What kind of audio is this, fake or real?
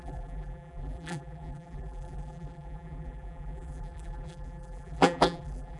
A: fake